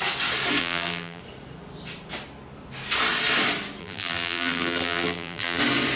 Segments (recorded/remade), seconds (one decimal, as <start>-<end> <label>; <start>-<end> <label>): 0.0-0.6 recorded; 0.6-1.2 remade; 1.2-3.8 recorded; 3.8-5.6 remade; 5.6-6.0 recorded